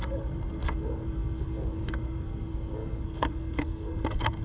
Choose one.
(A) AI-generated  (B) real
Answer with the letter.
A